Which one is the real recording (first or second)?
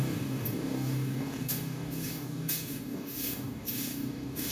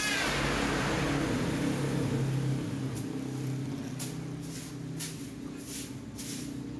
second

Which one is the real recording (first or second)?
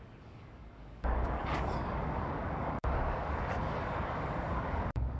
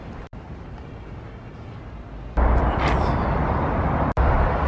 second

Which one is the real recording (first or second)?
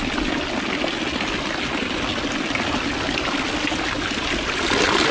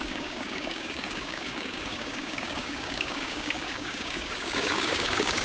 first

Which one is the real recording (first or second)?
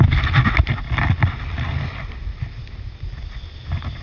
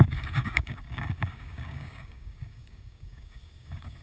first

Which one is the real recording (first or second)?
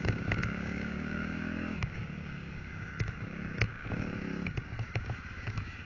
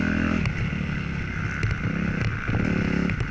second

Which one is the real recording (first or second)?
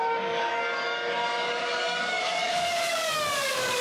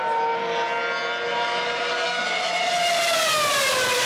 second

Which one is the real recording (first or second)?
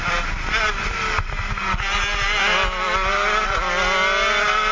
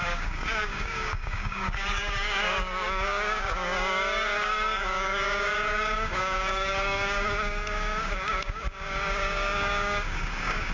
first